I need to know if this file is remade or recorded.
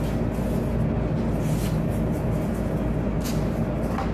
recorded